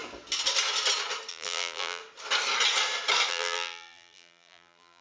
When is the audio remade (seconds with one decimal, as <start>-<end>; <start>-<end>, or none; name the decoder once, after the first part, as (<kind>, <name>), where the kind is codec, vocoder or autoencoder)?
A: 1.3-2.0 (vocoder, BigVGAN v2); 3.3-5.0